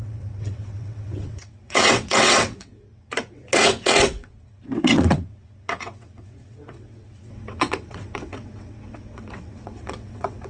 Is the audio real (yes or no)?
no